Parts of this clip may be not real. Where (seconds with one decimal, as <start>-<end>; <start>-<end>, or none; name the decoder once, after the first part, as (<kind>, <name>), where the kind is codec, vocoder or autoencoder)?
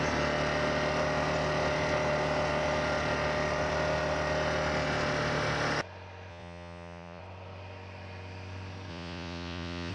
6.3-7.2 (vocoder, Vocos); 8.9-9.9